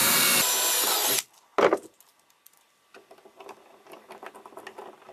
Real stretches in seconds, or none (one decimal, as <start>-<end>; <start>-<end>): 0.0-5.1